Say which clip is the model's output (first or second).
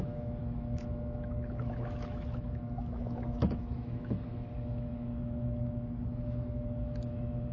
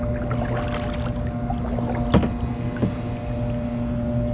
first